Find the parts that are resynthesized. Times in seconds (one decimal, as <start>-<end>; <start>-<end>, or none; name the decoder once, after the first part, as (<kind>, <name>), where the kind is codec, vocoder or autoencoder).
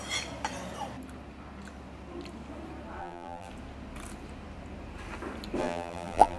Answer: 3.0-3.5 (vocoder, BigVGAN v2); 5.6-6.4